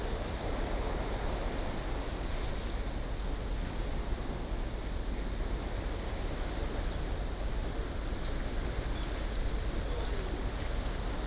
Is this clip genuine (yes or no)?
yes